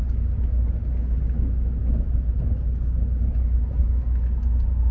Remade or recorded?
recorded